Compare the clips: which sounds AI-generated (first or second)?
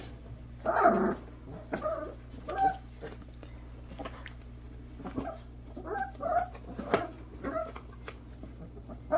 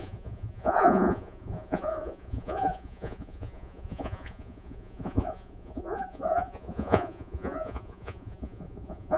second